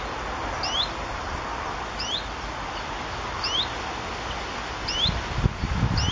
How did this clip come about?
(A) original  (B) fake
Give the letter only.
A